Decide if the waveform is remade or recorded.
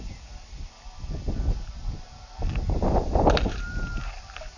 recorded